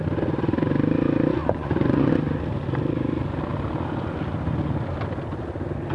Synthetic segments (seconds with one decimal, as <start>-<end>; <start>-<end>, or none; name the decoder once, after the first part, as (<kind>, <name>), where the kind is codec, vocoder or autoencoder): 1.4-2.1 (vocoder, Vocos)